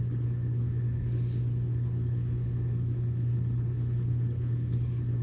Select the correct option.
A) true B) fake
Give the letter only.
B